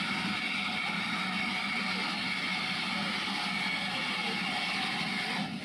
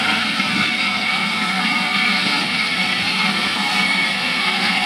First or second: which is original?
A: first